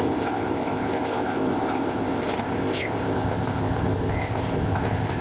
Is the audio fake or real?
fake